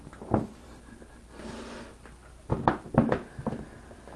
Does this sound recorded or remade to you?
recorded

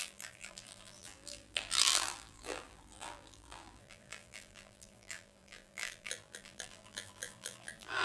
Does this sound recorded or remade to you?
remade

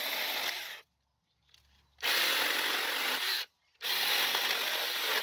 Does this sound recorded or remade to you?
recorded